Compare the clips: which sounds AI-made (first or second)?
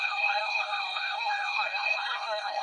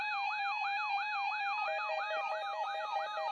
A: first